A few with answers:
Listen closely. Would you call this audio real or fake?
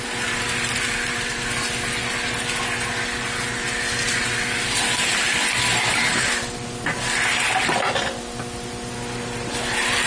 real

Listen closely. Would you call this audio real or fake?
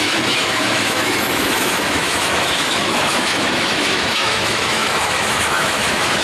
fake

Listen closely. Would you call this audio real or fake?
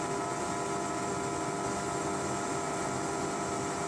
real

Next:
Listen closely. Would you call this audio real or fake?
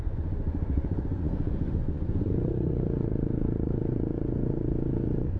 fake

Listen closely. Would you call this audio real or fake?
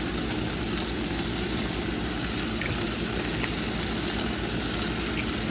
real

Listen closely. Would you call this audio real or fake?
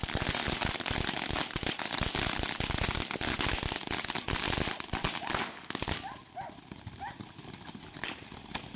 real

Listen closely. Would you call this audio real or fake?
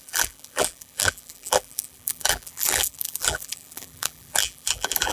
fake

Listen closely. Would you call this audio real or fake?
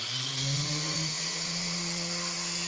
fake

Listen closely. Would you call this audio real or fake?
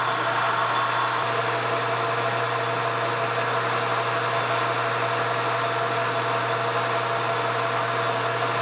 real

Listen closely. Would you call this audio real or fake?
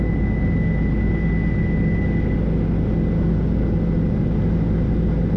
real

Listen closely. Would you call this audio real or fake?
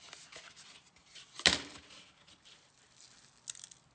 real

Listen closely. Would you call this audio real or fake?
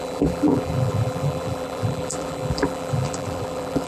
fake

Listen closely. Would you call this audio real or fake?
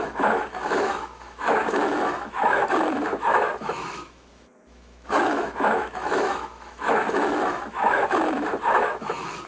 fake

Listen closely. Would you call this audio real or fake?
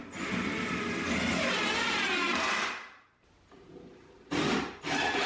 real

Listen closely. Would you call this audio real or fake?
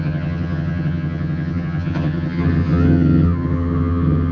fake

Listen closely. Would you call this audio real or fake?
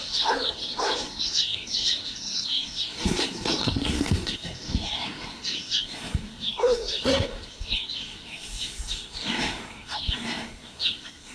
fake